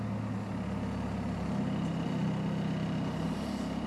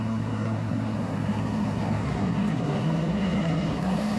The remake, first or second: second